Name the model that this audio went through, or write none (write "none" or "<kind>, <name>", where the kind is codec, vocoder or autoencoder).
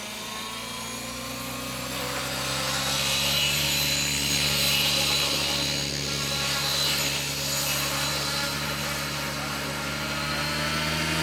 none